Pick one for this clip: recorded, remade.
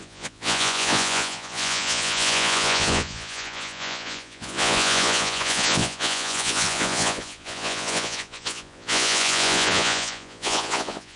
remade